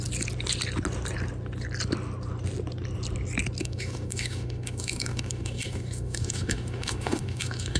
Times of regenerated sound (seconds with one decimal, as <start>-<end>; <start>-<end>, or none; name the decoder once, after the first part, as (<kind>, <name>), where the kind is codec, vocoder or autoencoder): 3.6-7.8 (autoencoder, DAC-VAE)